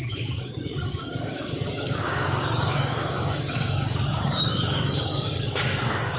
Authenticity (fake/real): fake